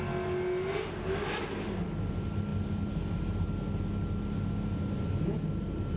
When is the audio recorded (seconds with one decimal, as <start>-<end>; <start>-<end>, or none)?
0.0-6.0